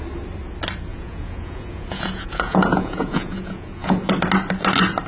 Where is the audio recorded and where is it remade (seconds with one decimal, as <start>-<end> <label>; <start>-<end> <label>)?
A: 0.0-0.9 recorded; 0.9-4.0 remade; 4.0-5.1 recorded